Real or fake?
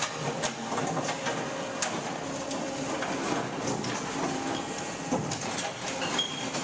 real